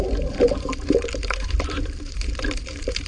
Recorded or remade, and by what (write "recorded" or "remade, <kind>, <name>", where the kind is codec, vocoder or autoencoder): remade, vocoder, BigVGAN v2